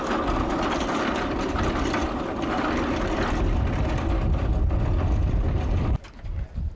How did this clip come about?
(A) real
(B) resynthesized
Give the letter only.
A